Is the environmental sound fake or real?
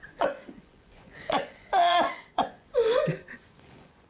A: fake